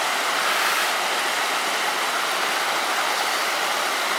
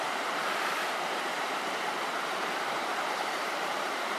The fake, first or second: second